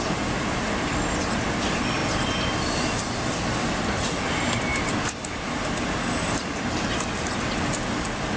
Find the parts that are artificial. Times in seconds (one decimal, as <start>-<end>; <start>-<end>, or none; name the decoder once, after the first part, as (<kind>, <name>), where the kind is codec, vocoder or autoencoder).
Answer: none